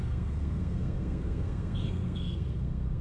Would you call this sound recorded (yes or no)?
no